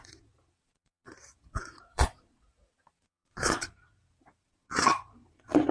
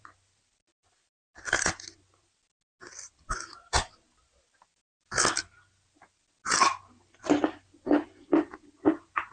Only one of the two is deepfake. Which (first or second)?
first